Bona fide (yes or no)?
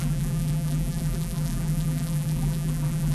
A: no